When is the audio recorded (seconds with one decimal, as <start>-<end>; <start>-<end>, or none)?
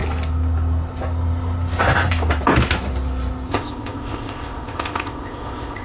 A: 0.0-3.5